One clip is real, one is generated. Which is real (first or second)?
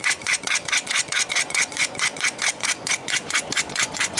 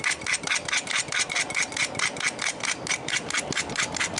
second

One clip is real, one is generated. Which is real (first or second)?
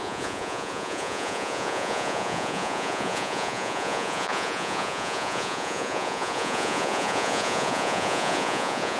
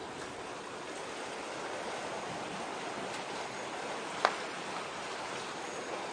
second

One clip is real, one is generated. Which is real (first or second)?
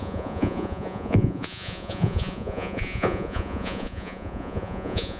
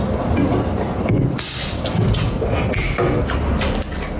second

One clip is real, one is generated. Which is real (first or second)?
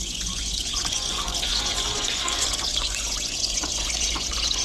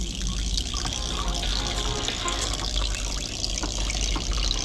second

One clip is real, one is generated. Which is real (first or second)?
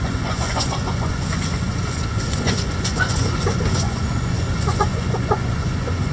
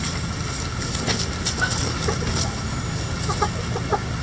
second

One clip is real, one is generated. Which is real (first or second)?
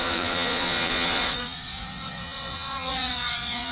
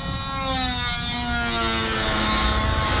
second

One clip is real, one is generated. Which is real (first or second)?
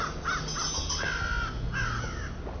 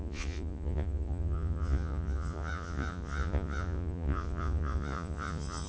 first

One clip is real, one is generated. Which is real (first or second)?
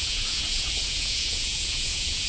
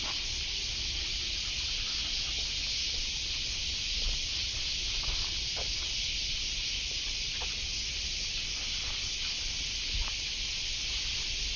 second